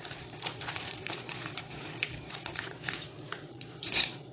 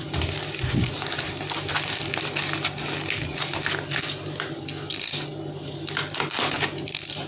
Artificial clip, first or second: first